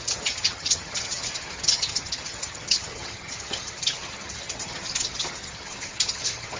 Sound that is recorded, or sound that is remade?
remade